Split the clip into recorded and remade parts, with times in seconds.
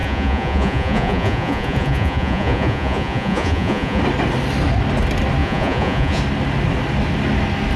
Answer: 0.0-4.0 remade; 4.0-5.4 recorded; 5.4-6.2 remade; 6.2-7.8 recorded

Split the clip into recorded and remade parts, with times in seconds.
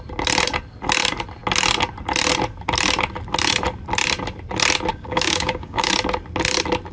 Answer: 0.0-4.9 recorded; 4.9-5.9 remade; 5.9-6.9 recorded